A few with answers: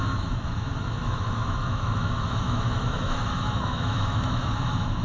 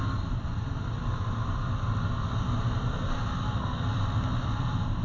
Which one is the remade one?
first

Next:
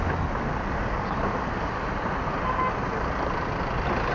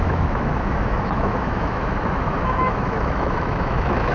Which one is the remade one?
second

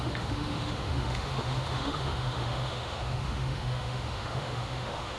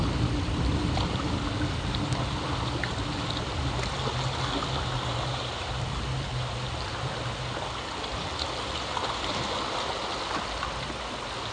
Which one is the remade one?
first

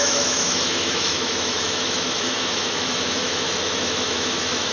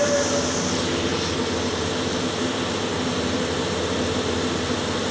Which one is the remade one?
first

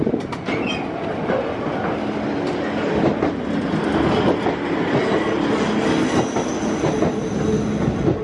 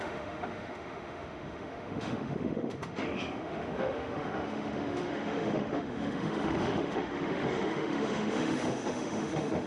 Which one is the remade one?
second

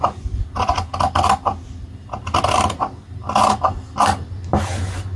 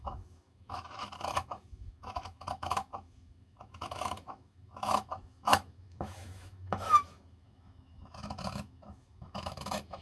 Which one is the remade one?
second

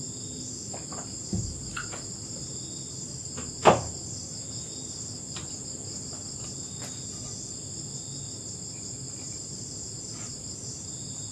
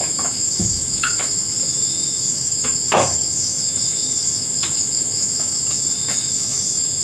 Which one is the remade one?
second